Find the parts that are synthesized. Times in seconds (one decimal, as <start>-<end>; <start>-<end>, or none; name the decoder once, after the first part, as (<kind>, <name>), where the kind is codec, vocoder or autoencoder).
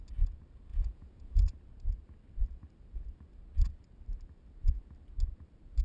0.7-1.5 (vocoder, Vocos)